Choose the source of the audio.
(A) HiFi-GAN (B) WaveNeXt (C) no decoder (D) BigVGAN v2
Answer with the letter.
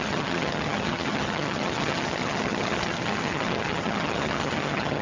A